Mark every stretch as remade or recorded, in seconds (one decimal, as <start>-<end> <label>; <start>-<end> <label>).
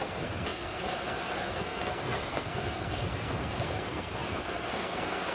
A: 0.0-5.3 remade